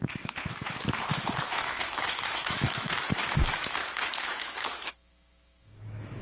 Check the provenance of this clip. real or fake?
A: fake